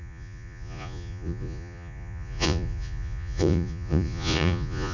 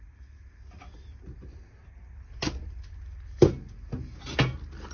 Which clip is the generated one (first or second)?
first